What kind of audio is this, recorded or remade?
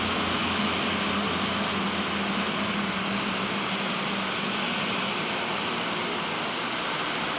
recorded